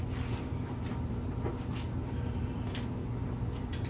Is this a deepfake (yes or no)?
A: no